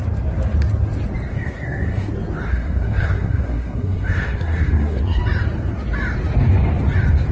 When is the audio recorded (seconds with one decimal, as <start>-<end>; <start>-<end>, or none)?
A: 0.0-1.3; 2.1-2.5; 5.2-7.3